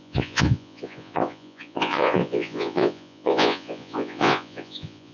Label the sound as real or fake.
fake